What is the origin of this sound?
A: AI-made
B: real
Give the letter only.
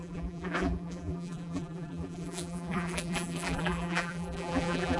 A